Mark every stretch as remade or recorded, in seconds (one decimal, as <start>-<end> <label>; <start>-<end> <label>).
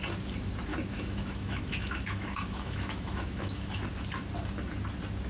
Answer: 0.0-0.7 recorded; 0.7-3.8 remade; 3.8-5.3 recorded